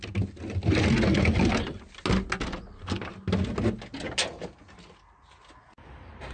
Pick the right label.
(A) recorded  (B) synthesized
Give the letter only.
A